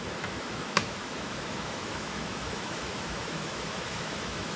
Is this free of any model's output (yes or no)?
no